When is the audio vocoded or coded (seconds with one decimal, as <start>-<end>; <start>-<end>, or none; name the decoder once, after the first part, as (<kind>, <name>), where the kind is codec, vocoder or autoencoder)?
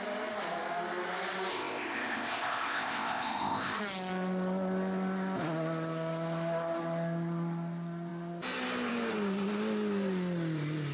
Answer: 1.5-3.8 (codec, ZipCodec)